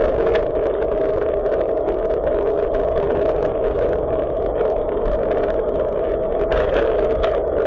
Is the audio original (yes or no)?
no